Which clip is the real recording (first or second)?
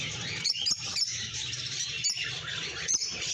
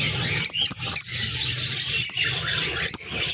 second